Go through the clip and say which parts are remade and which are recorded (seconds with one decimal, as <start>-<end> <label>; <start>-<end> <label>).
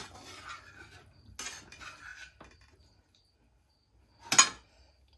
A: 0.0-5.2 recorded